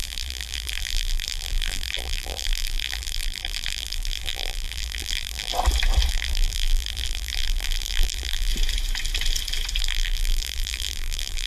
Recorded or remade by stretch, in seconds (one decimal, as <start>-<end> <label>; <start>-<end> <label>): 0.0-5.5 remade; 5.5-6.1 recorded; 6.1-8.5 remade; 8.5-9.8 recorded; 9.8-11.5 remade